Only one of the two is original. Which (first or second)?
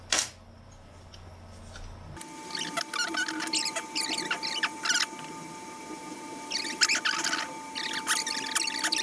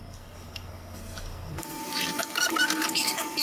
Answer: first